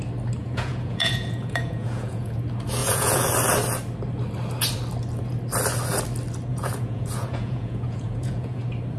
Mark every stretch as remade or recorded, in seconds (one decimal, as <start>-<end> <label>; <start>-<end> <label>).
0.0-0.4 recorded; 0.4-2.4 remade; 2.4-2.8 recorded; 2.8-3.3 remade; 3.3-6.5 recorded; 6.5-8.6 remade; 8.6-9.0 recorded